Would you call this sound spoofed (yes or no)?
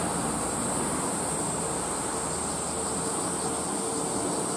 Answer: no